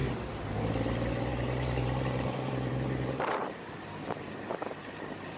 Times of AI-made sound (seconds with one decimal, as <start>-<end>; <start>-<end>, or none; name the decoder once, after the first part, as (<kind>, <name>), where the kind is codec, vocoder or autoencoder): 1.3-3.5 (vocoder, BigVGAN v2)